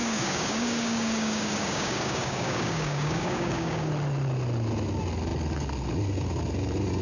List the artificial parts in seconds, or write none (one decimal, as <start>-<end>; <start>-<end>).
0.0-3.9